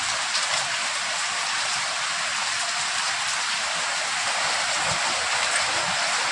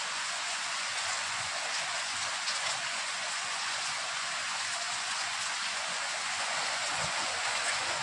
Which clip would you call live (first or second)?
first